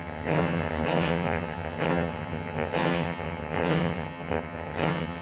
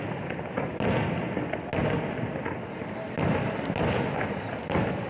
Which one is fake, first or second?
first